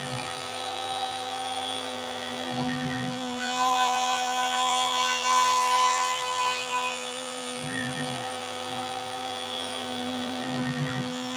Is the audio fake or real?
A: fake